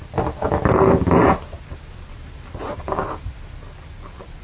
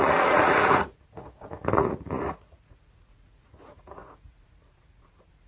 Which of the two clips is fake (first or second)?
second